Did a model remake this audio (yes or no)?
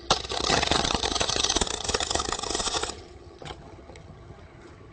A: yes